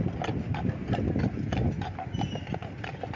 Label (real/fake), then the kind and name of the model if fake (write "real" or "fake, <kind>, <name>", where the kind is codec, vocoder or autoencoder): real